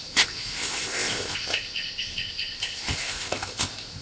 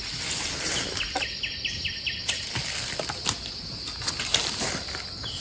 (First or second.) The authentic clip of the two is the second